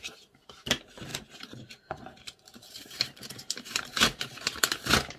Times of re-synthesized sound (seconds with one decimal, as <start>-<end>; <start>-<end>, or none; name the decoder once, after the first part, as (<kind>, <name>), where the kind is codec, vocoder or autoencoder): 0.0-5.2 (vocoder, BigVGAN v2)